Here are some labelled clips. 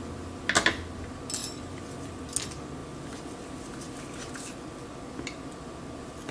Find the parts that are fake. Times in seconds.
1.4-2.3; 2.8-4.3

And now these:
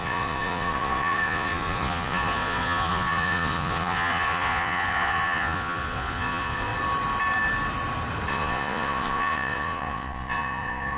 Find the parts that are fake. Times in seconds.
0.0-6.7; 8.3-11.0

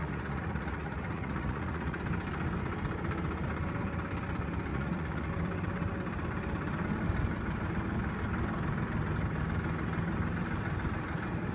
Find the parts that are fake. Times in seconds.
0.0-2.0; 4.7-5.3

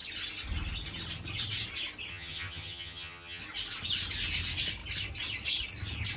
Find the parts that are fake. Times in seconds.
2.1-3.4